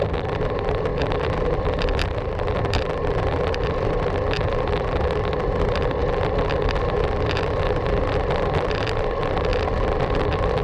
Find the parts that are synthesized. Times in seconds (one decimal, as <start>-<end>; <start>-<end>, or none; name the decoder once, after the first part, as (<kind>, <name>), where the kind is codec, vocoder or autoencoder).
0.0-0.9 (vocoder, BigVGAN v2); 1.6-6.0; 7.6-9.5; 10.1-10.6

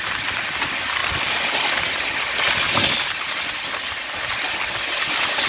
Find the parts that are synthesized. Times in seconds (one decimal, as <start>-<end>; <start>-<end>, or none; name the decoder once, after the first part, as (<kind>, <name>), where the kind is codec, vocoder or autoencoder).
1.0-2.7 (vocoder, BigVGAN v2)

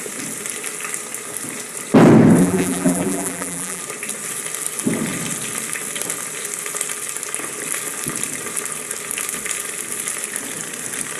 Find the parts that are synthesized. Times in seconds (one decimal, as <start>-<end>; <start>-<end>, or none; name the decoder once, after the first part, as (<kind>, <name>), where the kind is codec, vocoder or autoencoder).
2.4-3.8 (vocoder, BigVGAN v2)

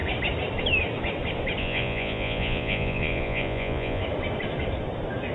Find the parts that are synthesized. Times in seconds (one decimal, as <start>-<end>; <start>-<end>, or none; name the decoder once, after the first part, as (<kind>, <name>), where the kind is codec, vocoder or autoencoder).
1.6-4.0 (vocoder, Vocos)

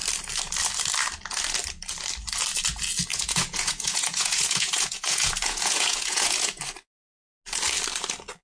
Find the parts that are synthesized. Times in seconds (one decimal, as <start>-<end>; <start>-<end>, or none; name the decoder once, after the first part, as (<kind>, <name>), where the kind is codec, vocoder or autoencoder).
3.1-6.6 (vocoder, Vocos)

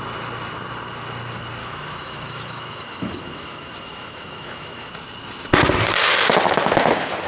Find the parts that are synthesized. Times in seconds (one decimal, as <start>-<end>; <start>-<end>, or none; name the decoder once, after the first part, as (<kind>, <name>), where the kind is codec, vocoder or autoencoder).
1.6-4.9 (autoencoder, DAC-VAE)

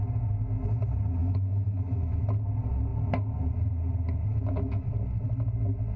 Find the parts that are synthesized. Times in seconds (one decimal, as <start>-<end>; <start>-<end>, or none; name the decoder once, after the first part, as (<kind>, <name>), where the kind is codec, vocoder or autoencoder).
1.2-2.2 (autoencoder, DAC-VAE); 4.3-4.9

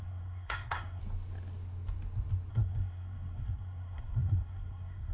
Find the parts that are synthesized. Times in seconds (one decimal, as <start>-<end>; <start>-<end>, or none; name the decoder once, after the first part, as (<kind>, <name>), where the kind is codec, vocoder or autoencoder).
0.0-1.0 (codec, SNAC); 2.5-5.1